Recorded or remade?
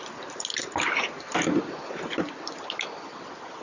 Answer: recorded